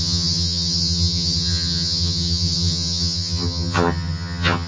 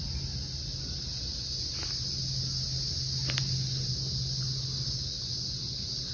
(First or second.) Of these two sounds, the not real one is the first